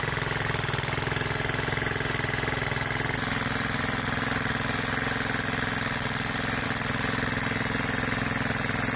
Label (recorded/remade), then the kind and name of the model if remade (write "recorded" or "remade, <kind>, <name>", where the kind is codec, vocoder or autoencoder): recorded